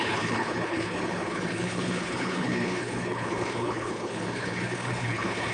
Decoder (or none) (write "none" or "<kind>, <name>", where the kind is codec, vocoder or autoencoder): codec, HILCodec